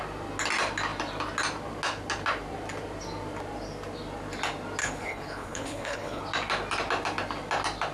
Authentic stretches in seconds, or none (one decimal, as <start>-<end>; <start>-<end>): 0.0-4.8; 6.2-7.9